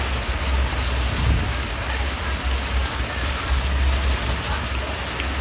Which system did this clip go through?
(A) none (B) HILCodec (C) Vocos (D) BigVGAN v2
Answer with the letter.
A